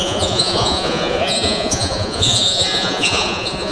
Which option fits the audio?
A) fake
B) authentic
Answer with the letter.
A